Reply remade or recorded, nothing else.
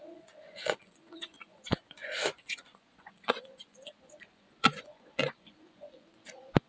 remade